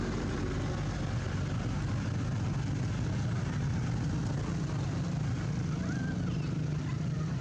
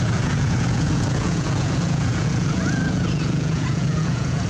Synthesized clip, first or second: second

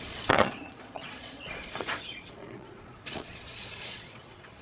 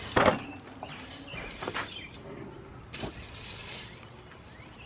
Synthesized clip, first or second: first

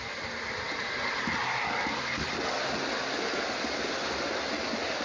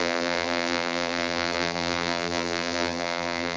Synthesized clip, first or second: second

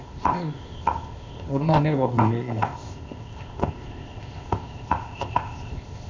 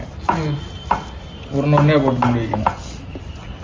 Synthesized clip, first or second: first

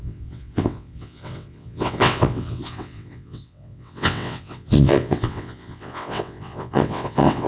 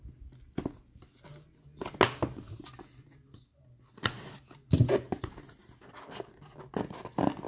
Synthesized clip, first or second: first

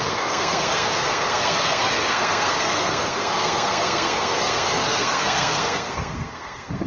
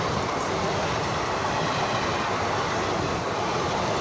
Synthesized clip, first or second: first